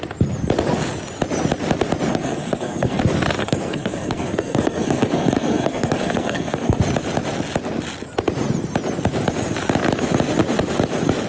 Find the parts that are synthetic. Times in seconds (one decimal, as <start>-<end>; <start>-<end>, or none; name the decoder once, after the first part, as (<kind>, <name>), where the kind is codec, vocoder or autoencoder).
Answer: 2.1-3.0 (codec, SNAC); 3.4-6.8